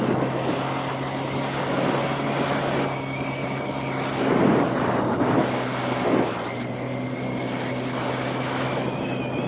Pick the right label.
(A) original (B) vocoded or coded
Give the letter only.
A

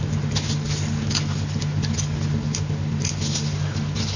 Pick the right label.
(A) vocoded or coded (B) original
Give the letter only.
B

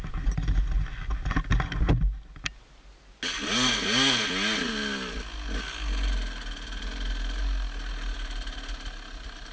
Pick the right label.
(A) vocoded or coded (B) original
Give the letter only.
B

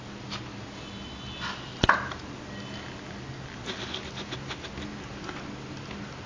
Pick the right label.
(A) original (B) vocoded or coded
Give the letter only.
A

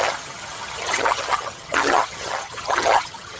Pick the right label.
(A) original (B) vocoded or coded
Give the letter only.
B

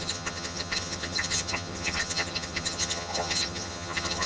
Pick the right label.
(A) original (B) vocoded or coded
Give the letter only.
B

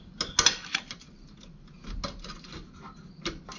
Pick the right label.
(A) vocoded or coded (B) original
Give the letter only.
B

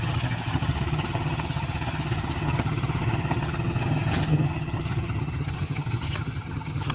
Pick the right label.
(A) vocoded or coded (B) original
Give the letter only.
A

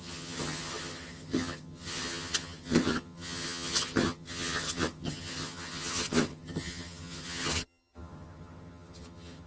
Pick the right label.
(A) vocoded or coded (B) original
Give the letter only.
A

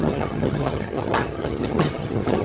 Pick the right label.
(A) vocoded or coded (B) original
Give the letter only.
A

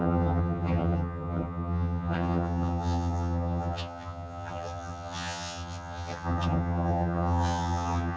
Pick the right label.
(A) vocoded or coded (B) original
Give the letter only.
A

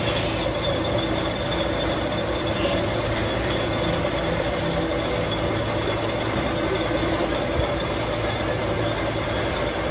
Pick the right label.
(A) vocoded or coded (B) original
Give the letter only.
B